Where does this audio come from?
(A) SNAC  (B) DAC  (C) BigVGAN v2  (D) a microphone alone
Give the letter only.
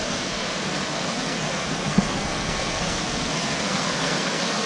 A